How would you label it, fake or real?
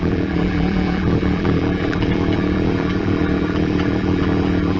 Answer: fake